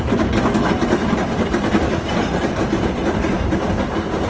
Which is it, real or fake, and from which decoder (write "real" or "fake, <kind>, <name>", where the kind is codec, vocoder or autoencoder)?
fake, vocoder, BigVGAN v2